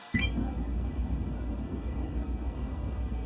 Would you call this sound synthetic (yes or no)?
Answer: yes